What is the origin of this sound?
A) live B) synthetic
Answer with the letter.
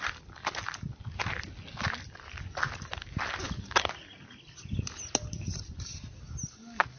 A